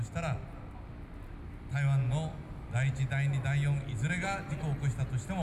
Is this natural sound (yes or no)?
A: yes